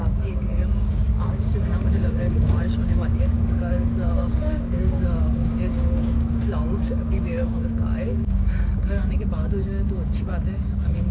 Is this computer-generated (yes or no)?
yes